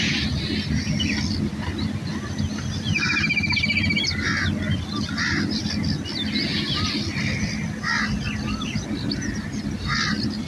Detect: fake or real real